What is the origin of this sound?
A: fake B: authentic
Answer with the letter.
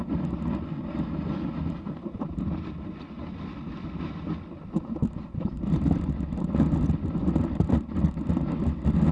B